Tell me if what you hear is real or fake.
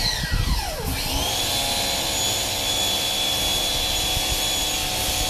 real